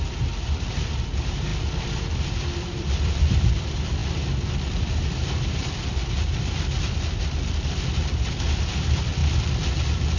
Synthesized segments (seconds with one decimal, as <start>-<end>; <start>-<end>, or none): 0.0-9.2